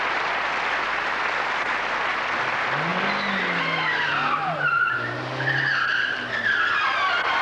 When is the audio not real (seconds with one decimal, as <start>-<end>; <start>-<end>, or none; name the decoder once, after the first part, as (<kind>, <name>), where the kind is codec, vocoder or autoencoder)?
none